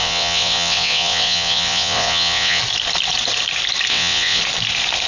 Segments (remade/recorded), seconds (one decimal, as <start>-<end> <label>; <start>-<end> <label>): 0.0-2.6 remade; 2.6-3.9 recorded; 3.9-4.4 remade; 4.4-5.1 recorded